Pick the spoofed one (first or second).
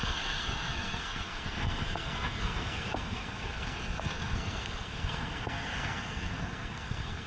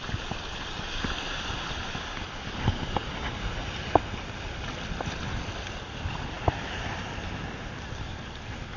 first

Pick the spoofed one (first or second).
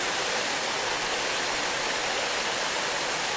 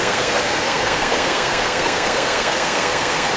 second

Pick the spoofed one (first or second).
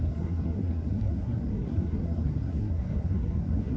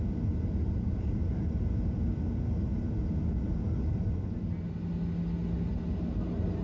first